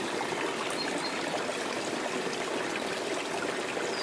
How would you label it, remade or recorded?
recorded